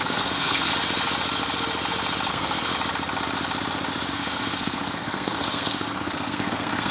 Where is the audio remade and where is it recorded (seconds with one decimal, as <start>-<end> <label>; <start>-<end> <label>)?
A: 0.0-0.7 remade; 0.7-2.3 recorded; 2.3-2.7 remade; 2.7-4.1 recorded; 4.1-6.9 remade

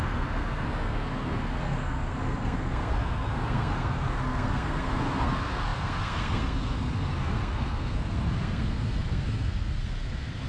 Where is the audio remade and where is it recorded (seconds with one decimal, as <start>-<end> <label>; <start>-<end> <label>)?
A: 0.0-10.5 remade

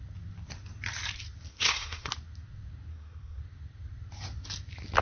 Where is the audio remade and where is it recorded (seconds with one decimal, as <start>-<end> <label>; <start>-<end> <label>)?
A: 0.0-1.5 recorded; 1.5-2.1 remade; 2.1-2.9 recorded; 2.9-3.4 remade; 3.4-5.0 recorded